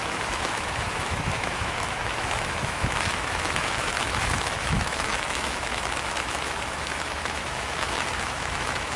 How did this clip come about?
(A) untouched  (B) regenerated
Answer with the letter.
B